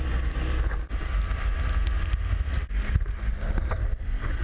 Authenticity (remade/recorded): recorded